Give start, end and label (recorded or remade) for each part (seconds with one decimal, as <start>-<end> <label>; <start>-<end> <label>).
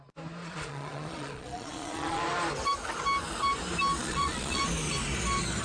0.0-0.4 recorded; 0.4-2.2 remade; 2.2-4.0 recorded; 4.0-4.6 remade; 4.6-5.6 recorded